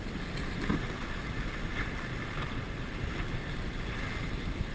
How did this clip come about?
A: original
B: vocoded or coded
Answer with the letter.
A